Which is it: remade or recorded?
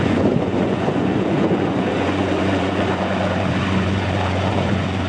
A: remade